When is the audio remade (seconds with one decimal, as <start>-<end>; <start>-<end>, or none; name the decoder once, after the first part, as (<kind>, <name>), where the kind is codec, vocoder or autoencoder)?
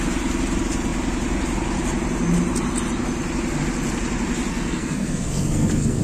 4.5-6.0 (codec, SNAC)